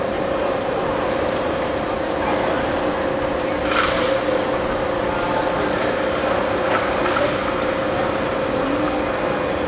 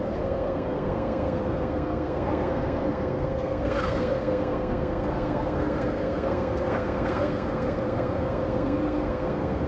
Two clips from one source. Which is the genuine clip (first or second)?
first